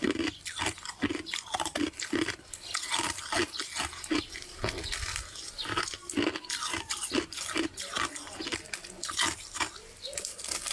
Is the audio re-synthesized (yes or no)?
no